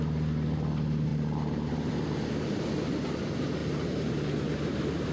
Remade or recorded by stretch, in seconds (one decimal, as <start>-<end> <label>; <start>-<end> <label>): 0.0-1.1 recorded; 1.1-1.9 remade; 1.9-3.6 recorded; 3.6-4.1 remade; 4.1-5.1 recorded

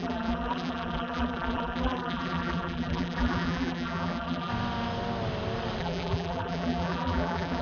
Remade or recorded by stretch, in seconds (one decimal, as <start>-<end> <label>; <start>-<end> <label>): 0.0-4.5 remade; 4.5-5.8 recorded; 5.8-7.6 remade

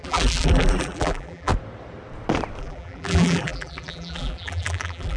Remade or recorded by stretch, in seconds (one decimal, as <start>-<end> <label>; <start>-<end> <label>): 0.0-1.5 remade; 1.5-2.6 recorded; 2.6-5.2 remade

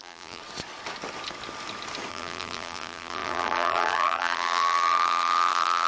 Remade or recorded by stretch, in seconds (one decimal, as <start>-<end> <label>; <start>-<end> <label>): 0.0-0.4 remade; 0.4-2.1 recorded; 2.1-5.9 remade